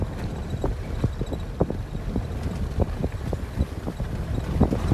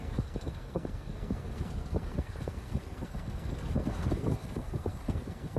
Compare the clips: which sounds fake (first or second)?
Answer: second